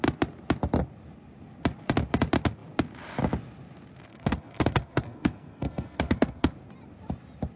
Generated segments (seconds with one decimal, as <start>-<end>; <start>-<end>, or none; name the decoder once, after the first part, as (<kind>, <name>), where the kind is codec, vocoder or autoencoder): 4.1-6.5 (codec, SNAC)